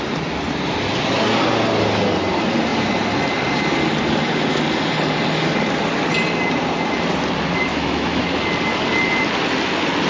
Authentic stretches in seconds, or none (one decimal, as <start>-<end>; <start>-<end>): 0.0-7.7; 8.4-10.1